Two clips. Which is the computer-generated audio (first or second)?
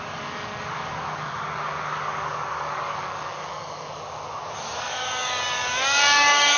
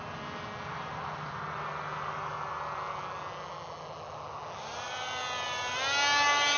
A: first